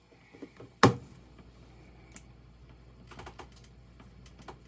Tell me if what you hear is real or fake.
real